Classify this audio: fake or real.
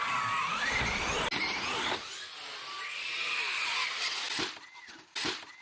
real